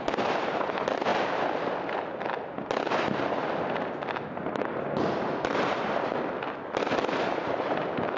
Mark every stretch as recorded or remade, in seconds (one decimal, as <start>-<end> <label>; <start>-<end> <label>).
0.0-8.2 recorded